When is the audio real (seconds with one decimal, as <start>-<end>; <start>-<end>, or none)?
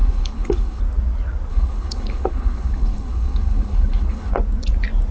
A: 0.8-1.5; 4.3-5.1